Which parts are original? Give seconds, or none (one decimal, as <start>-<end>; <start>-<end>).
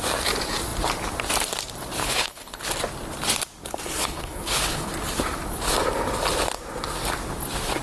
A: 0.0-2.0; 2.6-4.0; 4.9-7.8